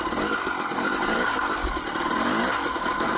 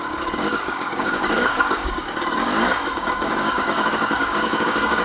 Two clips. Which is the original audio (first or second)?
first